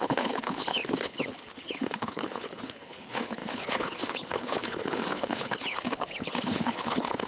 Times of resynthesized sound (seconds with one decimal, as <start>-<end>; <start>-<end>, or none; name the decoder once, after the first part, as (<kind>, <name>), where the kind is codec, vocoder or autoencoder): 0.0-7.3 (codec, HILCodec)